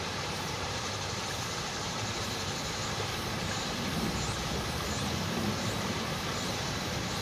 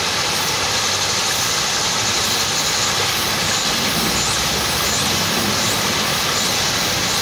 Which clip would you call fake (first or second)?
first